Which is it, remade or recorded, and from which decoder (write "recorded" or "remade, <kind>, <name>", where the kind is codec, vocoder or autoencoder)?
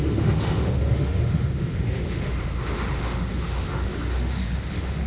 remade, autoencoder, DAC-VAE